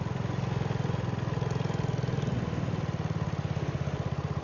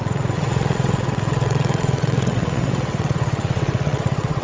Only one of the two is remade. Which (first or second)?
second